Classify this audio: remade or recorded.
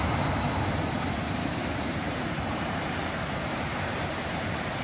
remade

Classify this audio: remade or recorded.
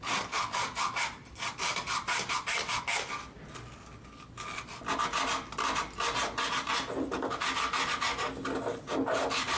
recorded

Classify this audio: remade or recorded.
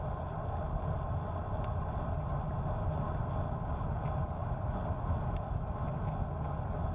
recorded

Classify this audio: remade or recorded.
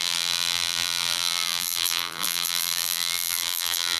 remade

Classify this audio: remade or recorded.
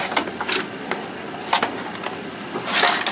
recorded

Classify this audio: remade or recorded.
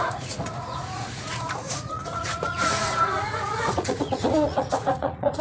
remade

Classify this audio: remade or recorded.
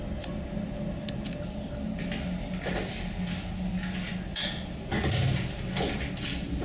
recorded